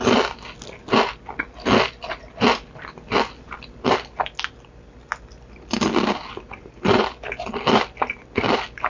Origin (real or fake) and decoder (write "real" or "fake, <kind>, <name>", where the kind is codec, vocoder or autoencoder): real